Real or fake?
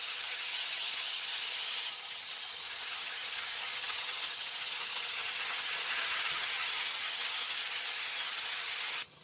fake